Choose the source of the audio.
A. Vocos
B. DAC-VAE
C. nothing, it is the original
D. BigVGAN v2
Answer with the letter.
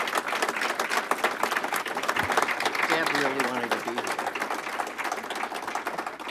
C